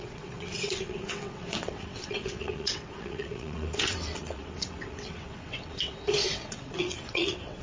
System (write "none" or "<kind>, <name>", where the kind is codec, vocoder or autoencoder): vocoder, WaveNeXt